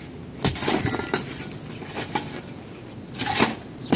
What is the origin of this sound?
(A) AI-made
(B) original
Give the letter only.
B